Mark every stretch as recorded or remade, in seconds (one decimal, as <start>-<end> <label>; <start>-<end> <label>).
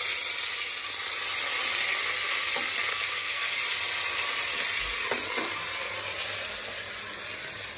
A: 0.0-2.9 recorded; 2.9-3.5 remade; 3.5-7.8 recorded